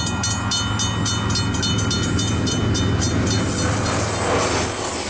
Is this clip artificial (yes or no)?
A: no